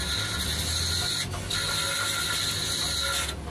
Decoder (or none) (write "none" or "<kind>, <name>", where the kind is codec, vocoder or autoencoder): none